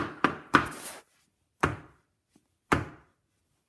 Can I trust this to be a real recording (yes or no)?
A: yes